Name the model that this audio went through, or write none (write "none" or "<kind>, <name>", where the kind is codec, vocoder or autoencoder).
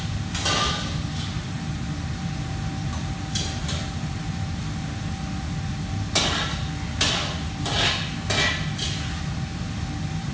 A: none